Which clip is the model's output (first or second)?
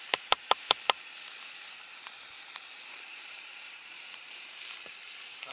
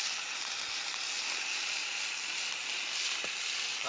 first